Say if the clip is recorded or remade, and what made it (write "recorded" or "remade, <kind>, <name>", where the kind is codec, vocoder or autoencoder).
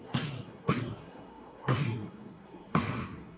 remade, codec, SNAC